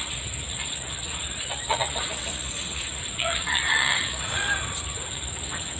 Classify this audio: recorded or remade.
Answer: remade